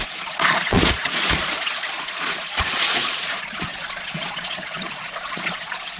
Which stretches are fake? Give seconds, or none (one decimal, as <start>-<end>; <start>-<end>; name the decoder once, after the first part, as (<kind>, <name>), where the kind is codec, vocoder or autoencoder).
0.0-6.0 (vocoder, Vocos)